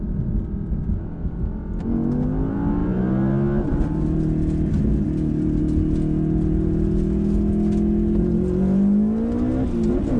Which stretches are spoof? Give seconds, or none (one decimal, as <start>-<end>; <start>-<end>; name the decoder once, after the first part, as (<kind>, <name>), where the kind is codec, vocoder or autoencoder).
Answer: none